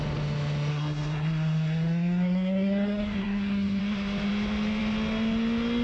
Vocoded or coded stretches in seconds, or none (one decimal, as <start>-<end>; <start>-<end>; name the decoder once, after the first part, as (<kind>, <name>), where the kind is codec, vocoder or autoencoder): 0.7-3.8 (codec, SNAC)